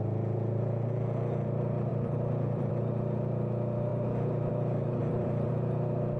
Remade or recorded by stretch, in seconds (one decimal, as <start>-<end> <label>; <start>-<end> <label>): 0.0-1.9 recorded; 1.9-2.7 remade; 2.7-5.0 recorded; 5.0-5.5 remade; 5.5-6.2 recorded